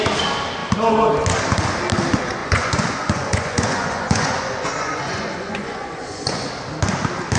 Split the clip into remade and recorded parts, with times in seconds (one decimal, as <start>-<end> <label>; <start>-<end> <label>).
0.0-2.4 recorded; 2.4-6.5 remade; 6.5-7.4 recorded